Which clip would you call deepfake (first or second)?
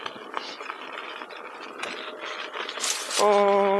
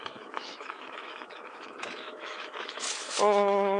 second